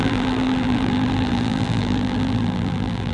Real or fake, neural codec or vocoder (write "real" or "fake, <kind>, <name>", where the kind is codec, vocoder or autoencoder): fake, vocoder, BigVGAN v2